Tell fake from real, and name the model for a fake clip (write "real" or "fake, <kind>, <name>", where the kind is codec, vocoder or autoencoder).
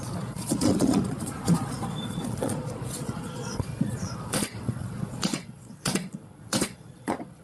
fake, vocoder, Vocos